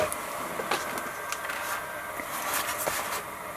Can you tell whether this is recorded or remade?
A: recorded